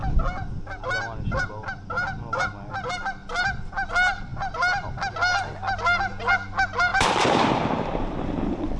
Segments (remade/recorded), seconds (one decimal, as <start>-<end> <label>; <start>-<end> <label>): 0.0-8.8 recorded